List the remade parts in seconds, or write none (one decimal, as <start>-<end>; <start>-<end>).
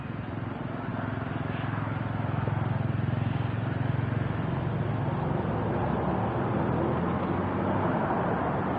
none